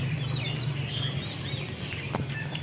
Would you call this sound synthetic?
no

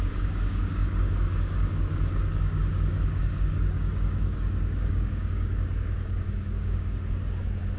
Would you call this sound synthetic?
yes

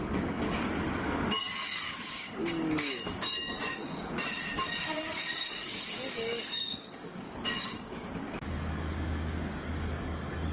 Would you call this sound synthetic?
yes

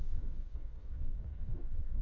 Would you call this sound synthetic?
yes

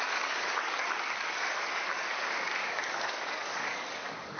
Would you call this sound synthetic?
yes